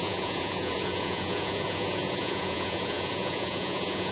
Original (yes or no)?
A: no